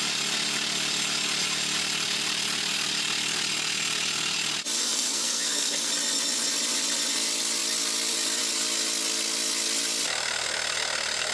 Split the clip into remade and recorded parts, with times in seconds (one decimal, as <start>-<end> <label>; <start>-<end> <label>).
0.0-4.8 recorded; 4.8-5.9 remade; 5.9-11.3 recorded